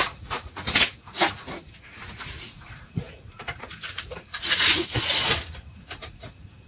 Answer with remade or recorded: remade